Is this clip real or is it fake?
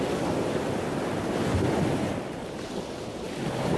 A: real